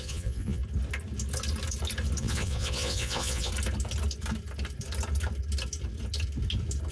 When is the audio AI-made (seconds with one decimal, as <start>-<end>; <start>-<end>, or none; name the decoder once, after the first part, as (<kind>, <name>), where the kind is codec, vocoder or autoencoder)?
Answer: 0.0-0.6 (vocoder, Vocos); 2.2-3.5